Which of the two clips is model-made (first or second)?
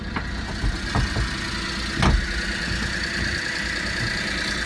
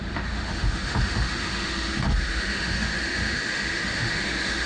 second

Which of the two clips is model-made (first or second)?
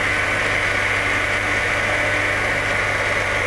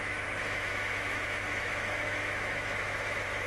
second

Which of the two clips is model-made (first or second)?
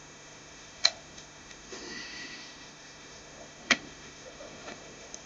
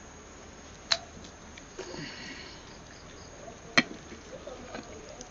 first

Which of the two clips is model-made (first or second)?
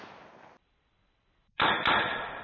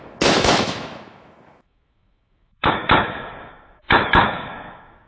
second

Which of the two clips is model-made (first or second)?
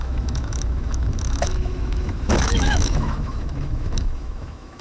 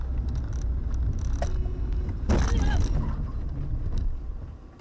first